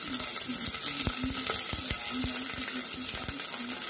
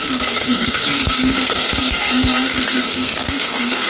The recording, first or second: first